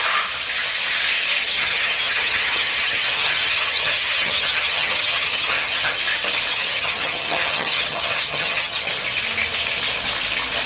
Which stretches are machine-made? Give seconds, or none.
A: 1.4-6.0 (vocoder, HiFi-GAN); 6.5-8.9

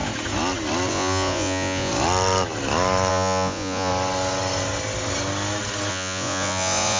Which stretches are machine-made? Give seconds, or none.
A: 0.9-1.9 (vocoder, Vocos); 3.1-3.9; 5.9-7.0

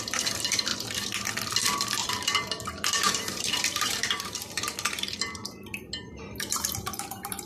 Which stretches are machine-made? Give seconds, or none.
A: 0.0-0.7 (vocoder, BigVGAN v2); 1.6-5.4; 6.0-7.5

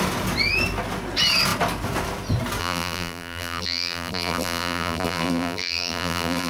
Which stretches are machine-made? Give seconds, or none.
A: 2.6-6.5 (vocoder, BigVGAN v2)

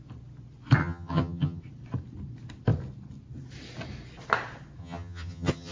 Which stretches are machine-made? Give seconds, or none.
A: 0.8-1.6 (vocoder, HiFi-GAN); 4.8-5.7

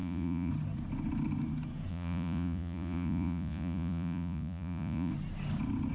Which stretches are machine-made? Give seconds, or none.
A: 0.0-0.5 (vocoder, Vocos); 1.9-5.1

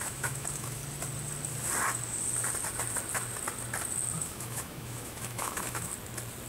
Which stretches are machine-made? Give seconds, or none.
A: 0.0-0.8 (autoencoder, DAC-VAE); 4.2-5.9